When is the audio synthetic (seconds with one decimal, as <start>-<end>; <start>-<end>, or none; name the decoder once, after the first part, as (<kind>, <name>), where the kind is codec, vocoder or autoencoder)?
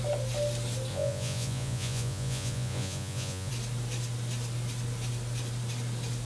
0.9-3.5 (vocoder, Vocos)